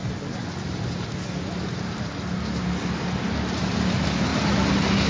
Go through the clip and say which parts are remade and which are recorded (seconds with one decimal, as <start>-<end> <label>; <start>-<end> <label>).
0.0-5.1 recorded